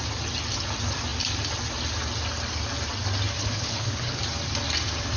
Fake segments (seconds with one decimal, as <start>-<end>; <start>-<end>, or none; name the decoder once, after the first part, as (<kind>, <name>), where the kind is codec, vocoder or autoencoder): 3.4-4.2 (codec, HILCodec)